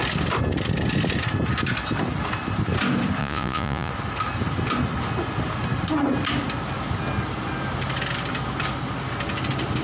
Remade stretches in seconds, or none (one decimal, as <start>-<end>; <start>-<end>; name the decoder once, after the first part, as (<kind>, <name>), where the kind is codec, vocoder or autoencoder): 3.2-3.9 (vocoder, Vocos)